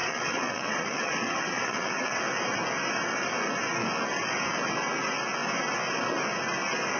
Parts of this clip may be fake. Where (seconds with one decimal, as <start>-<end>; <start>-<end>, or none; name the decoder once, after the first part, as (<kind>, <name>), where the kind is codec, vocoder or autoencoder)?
0.0-2.2 (vocoder, WaveNeXt)